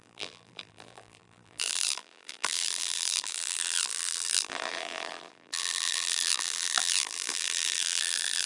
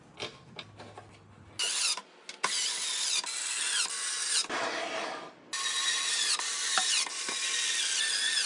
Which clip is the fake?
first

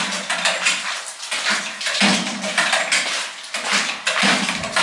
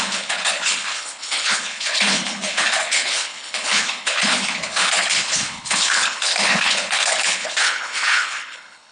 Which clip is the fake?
second